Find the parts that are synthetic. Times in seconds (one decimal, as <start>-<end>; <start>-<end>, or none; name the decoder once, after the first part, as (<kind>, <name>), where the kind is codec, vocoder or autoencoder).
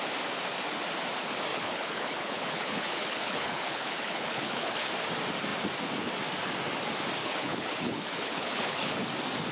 1.5-4.9 (codec, HILCodec); 7.2-8.9